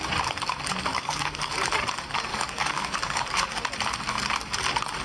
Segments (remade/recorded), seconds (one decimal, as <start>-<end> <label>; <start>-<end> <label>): 0.0-0.9 recorded; 0.9-1.5 remade; 1.5-2.3 recorded; 2.3-3.6 remade; 3.6-5.0 recorded